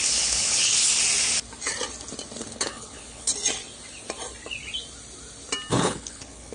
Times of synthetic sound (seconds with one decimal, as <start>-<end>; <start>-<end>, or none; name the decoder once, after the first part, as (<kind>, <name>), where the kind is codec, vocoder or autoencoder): 0.0-0.7 (codec, HILCodec); 2.5-3.3; 5.7-6.5